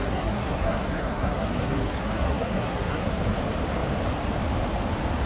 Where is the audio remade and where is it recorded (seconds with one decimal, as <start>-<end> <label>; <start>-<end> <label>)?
0.0-3.2 remade; 3.2-5.3 recorded